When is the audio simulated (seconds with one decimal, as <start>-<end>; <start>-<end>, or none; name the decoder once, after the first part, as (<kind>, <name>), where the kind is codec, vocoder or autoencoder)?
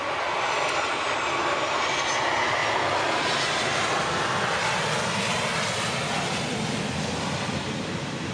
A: none